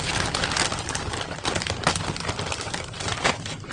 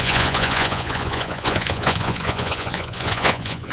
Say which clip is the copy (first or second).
second